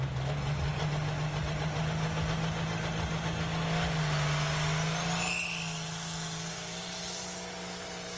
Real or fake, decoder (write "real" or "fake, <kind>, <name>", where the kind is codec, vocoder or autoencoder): real